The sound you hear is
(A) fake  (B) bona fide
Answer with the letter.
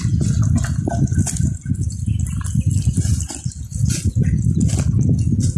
B